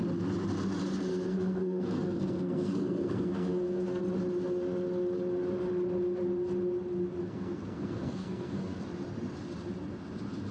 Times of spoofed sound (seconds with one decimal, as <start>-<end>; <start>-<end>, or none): 1.1-4.0; 7.2-8.8